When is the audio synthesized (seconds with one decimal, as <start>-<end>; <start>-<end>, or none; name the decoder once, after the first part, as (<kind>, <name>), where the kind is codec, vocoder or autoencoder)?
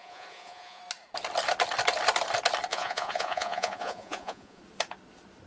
0.0-0.8 (vocoder, Vocos); 2.7-4.6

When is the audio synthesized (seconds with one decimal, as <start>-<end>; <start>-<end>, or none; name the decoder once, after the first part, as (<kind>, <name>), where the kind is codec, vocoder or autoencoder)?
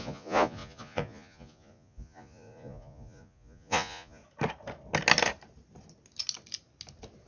0.0-4.2 (vocoder, Vocos)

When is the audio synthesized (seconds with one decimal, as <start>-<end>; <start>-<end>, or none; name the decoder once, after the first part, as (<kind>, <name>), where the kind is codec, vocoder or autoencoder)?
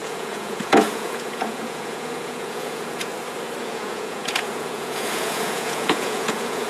0.0-3.1 (vocoder, Vocos); 3.6-6.7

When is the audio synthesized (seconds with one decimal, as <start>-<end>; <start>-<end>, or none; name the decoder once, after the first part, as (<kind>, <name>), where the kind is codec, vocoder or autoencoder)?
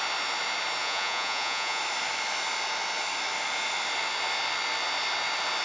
0.8-1.8 (vocoder, Vocos)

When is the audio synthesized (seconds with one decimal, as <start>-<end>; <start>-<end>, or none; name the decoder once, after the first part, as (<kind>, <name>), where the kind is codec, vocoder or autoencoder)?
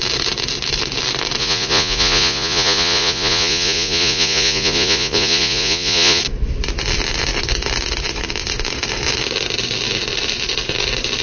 1.4-6.2 (vocoder, Vocos)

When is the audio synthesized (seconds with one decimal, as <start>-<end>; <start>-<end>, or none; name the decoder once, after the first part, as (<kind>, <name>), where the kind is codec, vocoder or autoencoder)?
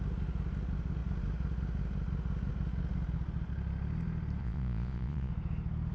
4.4-5.3 (vocoder, Vocos)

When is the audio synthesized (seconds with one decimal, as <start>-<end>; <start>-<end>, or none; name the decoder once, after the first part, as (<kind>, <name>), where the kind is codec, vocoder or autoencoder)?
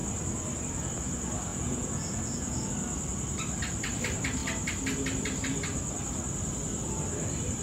1.5-2.7 (vocoder, Vocos)